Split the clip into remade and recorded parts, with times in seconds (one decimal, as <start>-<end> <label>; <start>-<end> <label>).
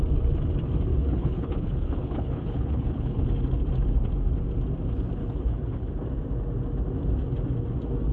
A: 0.0-0.9 recorded; 0.9-3.2 remade; 3.2-5.2 recorded; 5.2-5.9 remade; 5.9-8.1 recorded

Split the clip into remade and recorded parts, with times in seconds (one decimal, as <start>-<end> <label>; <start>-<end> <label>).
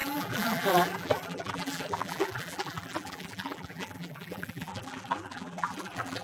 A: 0.0-6.2 remade